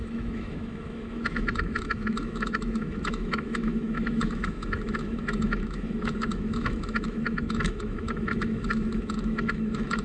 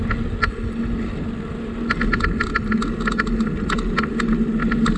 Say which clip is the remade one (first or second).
first